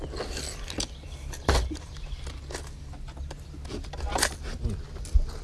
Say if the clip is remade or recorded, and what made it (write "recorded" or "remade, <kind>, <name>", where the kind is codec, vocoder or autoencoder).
recorded